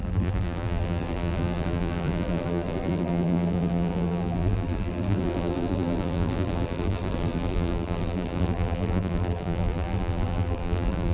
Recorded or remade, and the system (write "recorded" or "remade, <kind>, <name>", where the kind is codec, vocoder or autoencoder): remade, vocoder, BigVGAN v2